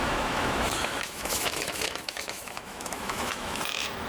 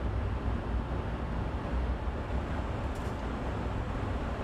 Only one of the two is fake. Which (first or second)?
first